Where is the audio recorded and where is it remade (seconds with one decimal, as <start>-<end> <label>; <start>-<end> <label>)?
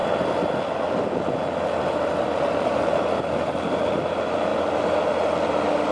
0.0-3.5 recorded; 3.5-4.5 remade; 4.5-5.9 recorded